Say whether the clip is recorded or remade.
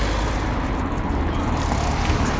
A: recorded